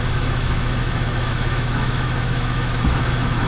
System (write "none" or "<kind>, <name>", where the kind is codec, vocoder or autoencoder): autoencoder, DAC-VAE